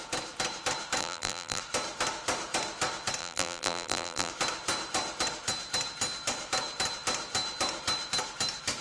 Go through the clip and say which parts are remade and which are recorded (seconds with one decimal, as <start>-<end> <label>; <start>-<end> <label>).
0.0-1.0 recorded; 1.0-1.6 remade; 1.6-3.2 recorded; 3.2-4.3 remade; 4.3-8.8 recorded

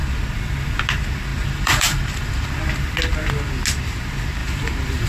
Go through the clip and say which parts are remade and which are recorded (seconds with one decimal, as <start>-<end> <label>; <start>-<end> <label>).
0.0-1.3 recorded; 1.3-2.6 remade; 2.6-4.4 recorded; 4.4-5.1 remade

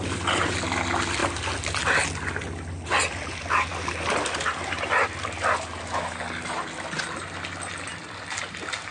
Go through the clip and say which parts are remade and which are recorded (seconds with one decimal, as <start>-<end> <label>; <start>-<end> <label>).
0.0-8.9 recorded

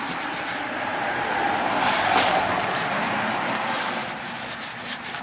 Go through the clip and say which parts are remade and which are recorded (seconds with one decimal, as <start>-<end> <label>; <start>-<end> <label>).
0.0-5.2 recorded

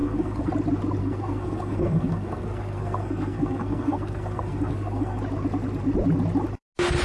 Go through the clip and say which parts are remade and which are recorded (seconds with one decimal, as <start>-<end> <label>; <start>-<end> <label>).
0.0-0.5 remade; 0.5-1.0 recorded; 1.0-5.2 remade; 5.2-7.0 recorded